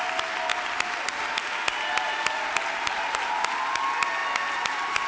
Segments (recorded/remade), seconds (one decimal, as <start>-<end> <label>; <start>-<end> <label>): 0.0-5.1 recorded